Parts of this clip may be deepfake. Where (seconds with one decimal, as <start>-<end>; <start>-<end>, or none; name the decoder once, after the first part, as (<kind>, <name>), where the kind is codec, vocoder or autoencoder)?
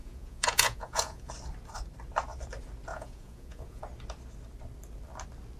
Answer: 0.0-1.3 (vocoder, Vocos); 2.9-3.8